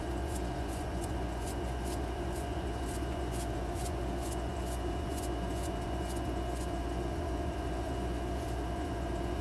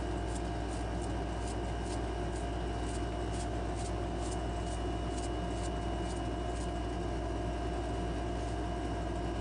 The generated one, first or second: first